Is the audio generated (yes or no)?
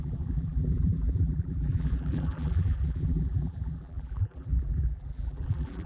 yes